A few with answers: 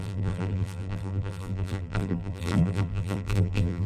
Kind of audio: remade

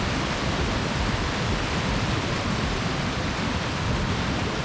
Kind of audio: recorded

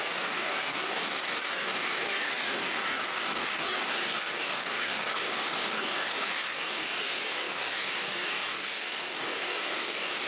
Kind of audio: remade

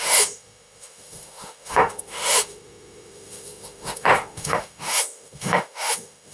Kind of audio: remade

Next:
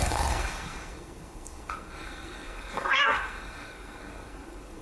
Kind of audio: remade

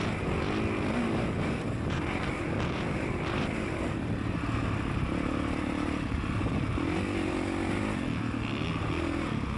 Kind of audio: recorded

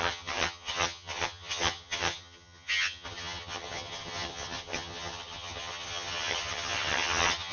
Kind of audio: remade